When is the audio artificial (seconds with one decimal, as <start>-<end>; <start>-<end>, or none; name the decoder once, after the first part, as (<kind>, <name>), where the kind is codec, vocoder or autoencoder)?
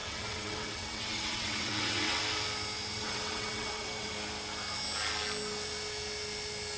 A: 0.0-2.2 (vocoder, WaveNeXt); 2.9-4.1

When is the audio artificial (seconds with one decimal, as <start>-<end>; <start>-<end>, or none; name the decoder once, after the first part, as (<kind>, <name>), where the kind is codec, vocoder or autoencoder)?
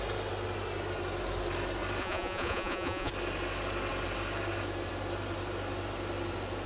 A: 2.0-3.1 (vocoder, Vocos)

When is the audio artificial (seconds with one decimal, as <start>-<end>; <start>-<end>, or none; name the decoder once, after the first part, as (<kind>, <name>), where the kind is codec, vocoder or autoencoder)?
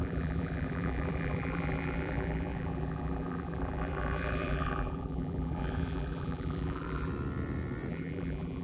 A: 0.0-7.1 (vocoder, BigVGAN v2); 7.9-8.6